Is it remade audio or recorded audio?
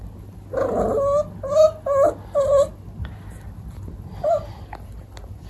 recorded